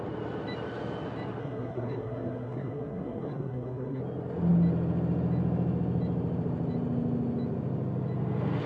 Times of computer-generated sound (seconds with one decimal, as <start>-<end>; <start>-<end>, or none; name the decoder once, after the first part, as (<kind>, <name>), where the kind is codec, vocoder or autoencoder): 1.4-4.0 (codec, SNAC)